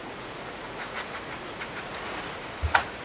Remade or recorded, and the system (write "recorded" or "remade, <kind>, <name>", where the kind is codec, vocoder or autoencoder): remade, vocoder, Vocos